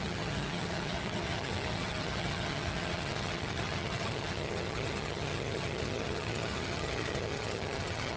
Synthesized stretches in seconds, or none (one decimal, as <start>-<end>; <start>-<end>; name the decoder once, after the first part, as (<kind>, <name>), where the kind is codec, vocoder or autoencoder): 0.0-8.2 (vocoder, HiFi-GAN)